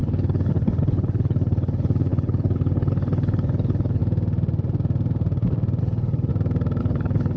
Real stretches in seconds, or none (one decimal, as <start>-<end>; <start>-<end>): 4.0-5.8; 6.3-6.8